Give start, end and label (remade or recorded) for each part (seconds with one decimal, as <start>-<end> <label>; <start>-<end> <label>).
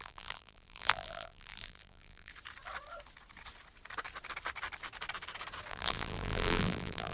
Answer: 0.0-2.3 remade; 2.3-5.7 recorded; 5.7-7.1 remade